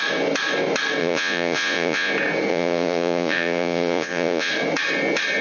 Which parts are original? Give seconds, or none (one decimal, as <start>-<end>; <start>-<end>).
0.0-1.0; 2.1-2.5; 4.5-5.4